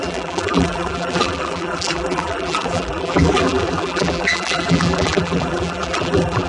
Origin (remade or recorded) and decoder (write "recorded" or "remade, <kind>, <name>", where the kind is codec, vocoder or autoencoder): remade, vocoder, BigVGAN v2